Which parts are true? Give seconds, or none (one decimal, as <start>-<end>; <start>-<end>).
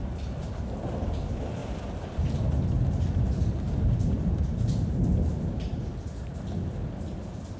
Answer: 0.0-7.6